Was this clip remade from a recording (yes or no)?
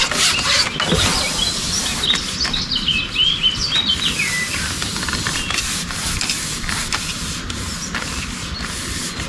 no